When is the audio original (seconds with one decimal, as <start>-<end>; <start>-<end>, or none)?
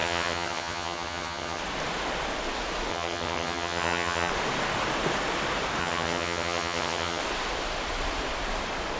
1.6-2.9; 4.3-5.8; 7.2-9.0